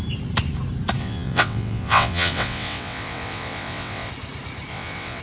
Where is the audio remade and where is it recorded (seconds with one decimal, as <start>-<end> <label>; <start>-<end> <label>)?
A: 0.0-1.0 recorded; 1.0-4.1 remade; 4.1-4.7 recorded; 4.7-5.2 remade